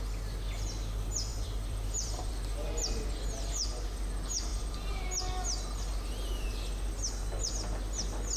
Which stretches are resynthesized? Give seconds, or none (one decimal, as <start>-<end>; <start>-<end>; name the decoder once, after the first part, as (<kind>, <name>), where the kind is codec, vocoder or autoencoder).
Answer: 1.3-2.3 (vocoder, BigVGAN v2); 4.5-5.0